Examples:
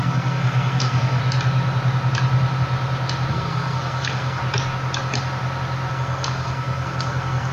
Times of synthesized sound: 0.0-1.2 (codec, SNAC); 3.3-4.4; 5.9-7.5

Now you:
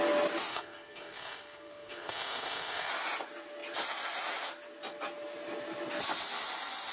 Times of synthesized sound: 0.5-2.9 (codec, SNAC)

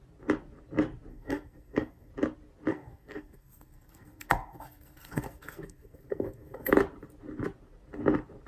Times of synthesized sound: 1.1-2.1 (codec, SNAC); 2.7-6.7

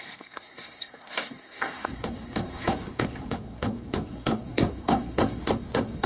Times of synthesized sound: 0.0-6.1 (codec, SNAC)

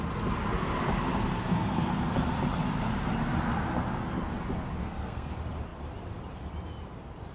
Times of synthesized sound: 4.8-5.3 (codec, SNAC)

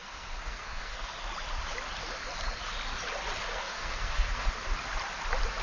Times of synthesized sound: 0.0-1.1 (codec, SNAC); 3.5-4.5

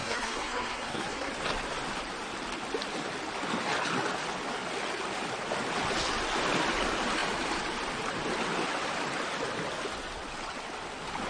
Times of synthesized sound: 0.0-1.3 (codec, SNAC)